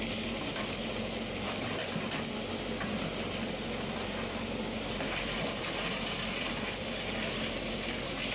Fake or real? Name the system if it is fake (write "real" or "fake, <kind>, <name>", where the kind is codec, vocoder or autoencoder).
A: real